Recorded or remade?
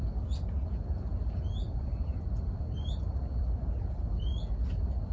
recorded